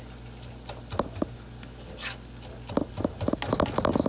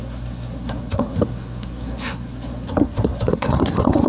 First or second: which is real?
first